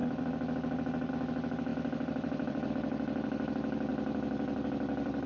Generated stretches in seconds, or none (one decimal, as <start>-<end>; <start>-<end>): 0.0-1.1; 1.7-2.7; 3.9-4.7

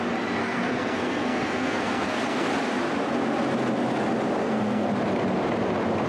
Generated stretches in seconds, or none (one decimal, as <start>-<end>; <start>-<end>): 0.4-2.5; 4.4-4.9

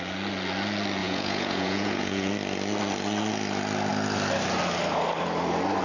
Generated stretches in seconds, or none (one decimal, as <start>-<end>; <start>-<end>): 1.0-2.3

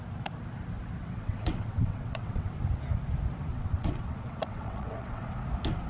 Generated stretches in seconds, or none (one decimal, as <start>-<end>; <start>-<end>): 1.0-2.5; 3.5-5.2

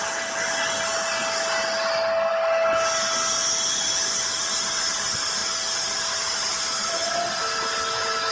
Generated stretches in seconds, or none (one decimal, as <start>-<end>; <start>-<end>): none

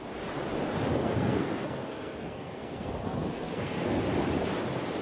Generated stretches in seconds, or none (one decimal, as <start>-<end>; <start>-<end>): 1.0-4.0

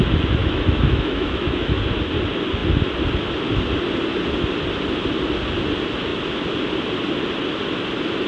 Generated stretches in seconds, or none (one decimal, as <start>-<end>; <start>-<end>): 0.4-1.8

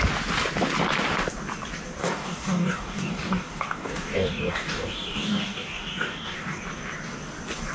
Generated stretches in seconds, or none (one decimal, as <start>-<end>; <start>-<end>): 2.0-6.6